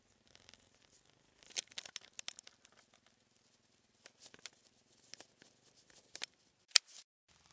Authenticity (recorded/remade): recorded